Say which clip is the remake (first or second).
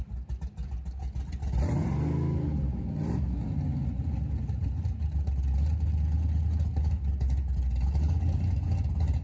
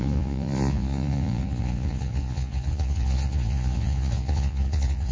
second